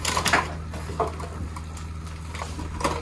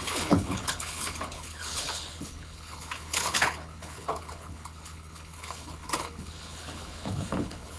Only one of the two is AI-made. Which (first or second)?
second